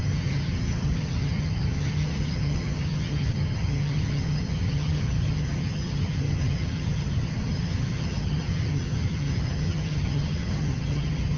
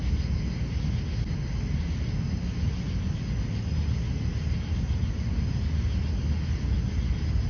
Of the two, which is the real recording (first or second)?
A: second